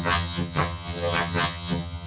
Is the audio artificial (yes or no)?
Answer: yes